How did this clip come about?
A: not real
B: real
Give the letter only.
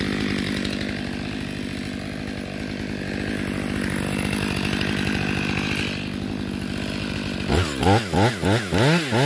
B